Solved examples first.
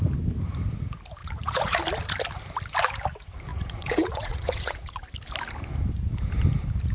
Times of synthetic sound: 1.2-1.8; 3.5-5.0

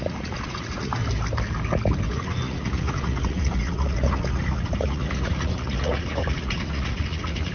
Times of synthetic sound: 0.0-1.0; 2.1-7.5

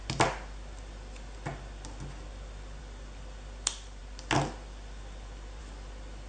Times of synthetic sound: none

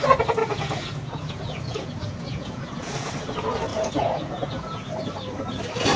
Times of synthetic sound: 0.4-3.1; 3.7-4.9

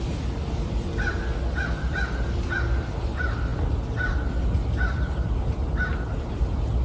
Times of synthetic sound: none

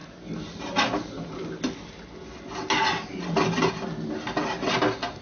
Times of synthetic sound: none